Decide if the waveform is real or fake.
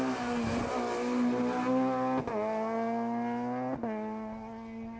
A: real